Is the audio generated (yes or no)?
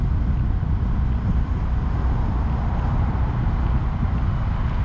no